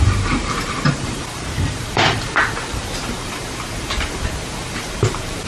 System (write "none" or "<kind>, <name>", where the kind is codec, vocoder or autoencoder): vocoder, BigVGAN v2